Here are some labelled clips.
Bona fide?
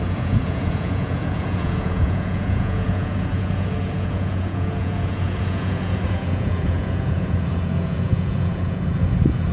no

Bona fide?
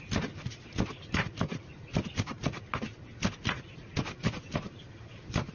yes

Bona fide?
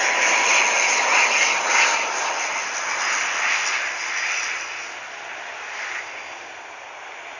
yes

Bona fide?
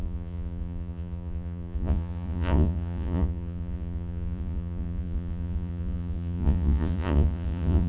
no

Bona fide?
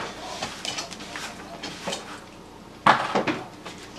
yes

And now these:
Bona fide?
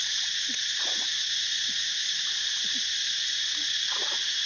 no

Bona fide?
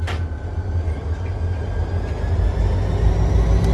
yes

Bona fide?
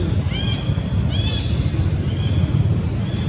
yes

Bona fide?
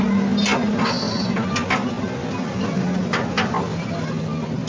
yes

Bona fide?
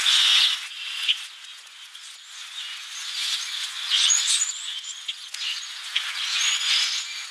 no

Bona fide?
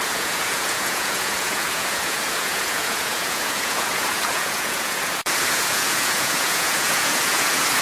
no